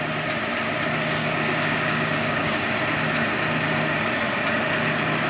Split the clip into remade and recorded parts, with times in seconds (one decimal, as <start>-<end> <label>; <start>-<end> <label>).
0.0-1.2 recorded; 1.2-2.6 remade; 2.6-5.3 recorded